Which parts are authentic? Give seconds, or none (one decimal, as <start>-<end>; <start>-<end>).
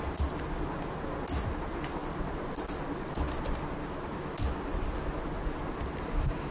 0.0-6.5